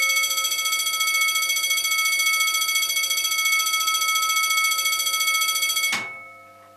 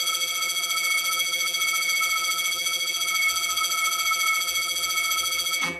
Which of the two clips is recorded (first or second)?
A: first